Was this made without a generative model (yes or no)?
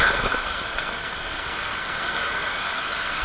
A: no